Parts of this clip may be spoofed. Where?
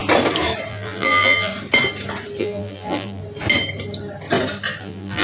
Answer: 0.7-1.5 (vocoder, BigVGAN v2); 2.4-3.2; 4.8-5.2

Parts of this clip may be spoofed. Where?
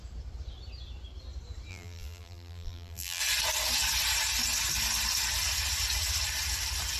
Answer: 1.7-3.2 (vocoder, BigVGAN v2)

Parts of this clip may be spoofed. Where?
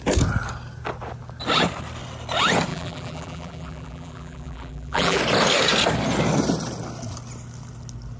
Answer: 2.7-5.2 (vocoder, BigVGAN v2)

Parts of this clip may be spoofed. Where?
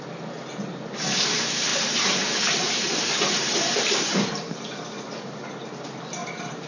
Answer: 1.7-4.6 (vocoder, BigVGAN v2); 6.2-6.7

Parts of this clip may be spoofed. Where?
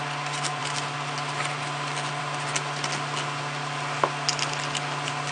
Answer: none